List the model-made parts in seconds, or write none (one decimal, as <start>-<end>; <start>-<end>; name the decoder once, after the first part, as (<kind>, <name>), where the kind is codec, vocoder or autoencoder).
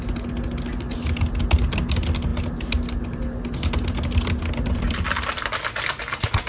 none